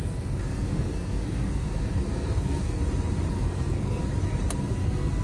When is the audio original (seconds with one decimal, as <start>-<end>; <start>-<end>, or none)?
2.8-3.3; 4.0-4.6